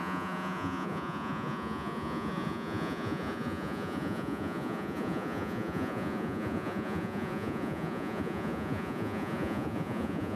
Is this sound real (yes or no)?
no